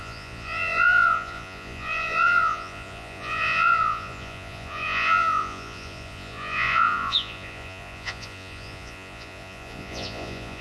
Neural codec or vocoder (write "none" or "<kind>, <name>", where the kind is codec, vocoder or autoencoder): vocoder, Vocos